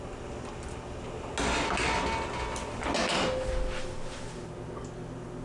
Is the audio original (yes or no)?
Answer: yes